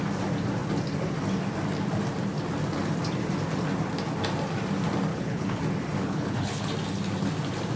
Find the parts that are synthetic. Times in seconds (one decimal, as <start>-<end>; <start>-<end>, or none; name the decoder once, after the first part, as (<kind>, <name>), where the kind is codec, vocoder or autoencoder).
5.1-5.6 (codec, HILCodec); 6.0-6.7